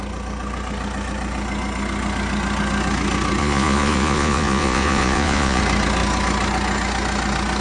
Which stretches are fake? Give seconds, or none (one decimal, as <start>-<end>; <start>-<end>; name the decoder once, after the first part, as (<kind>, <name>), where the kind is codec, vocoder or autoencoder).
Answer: 3.4-5.6 (vocoder, Vocos)